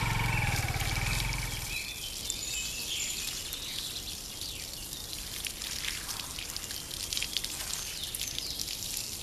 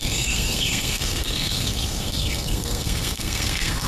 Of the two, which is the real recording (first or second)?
first